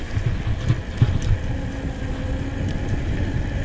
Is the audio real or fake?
real